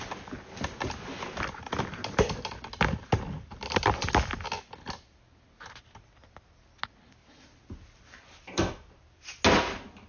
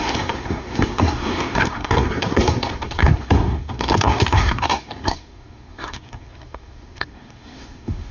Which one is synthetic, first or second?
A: second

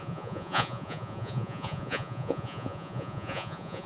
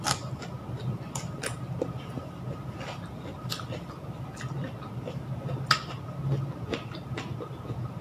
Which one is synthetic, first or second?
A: first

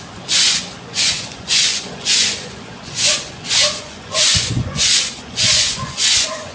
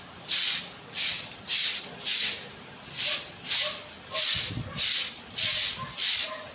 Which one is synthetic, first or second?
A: first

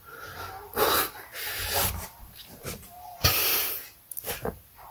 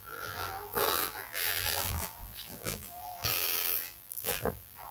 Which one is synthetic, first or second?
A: second